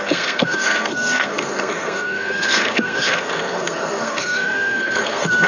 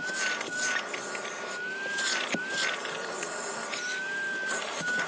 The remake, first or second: first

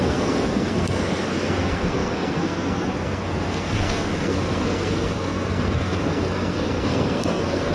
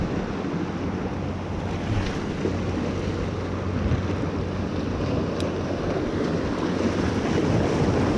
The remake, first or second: first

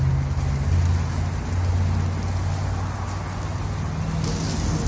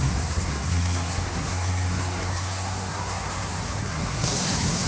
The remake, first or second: second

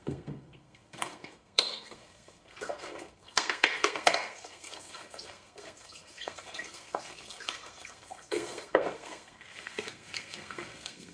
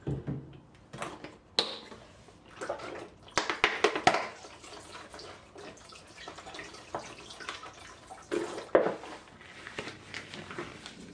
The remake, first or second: first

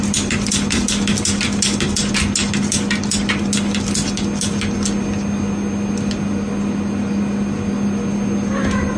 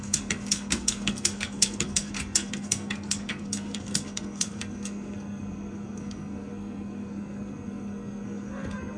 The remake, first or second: second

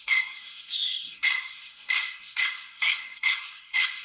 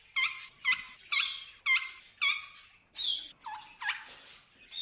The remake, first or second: first